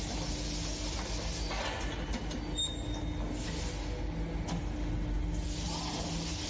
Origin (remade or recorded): recorded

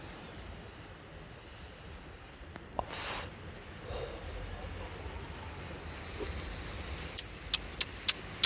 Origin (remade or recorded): recorded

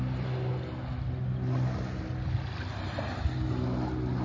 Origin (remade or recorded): recorded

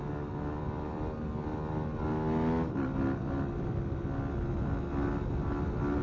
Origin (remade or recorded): recorded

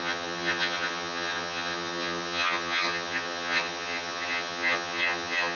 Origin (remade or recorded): remade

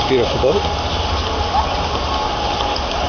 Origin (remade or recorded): recorded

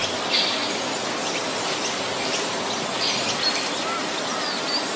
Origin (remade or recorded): recorded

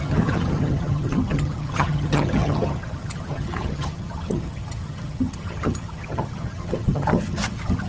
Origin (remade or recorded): remade